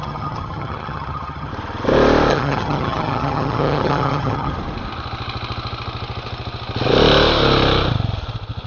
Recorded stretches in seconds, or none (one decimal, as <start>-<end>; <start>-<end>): 1.5-2.3; 4.5-8.7

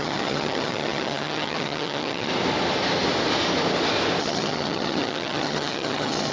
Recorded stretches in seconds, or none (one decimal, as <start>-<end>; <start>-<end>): 2.3-4.2

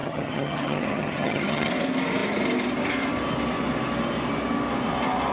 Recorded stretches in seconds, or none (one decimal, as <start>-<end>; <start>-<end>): 1.7-5.3

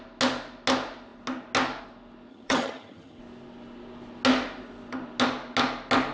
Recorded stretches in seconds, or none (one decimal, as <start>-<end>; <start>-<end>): 0.0-2.3; 3.2-6.1

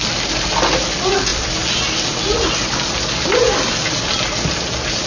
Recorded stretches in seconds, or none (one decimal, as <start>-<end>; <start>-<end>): 0.0-5.1

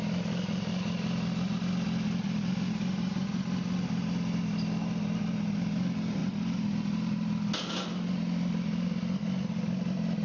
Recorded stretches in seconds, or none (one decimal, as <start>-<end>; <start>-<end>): 0.0-10.2

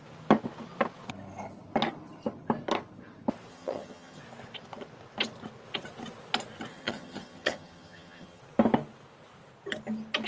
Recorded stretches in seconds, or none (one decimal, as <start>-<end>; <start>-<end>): 0.0-3.5; 4.2-6.7; 8.4-10.3